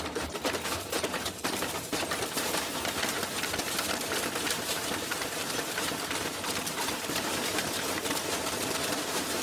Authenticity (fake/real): fake